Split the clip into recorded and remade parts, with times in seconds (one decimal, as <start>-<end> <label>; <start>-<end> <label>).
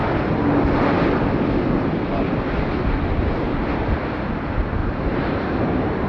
0.0-4.8 recorded; 4.8-6.1 remade